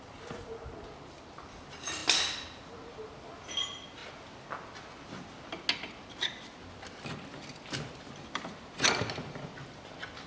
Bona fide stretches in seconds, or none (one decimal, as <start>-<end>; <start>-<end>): 0.0-10.3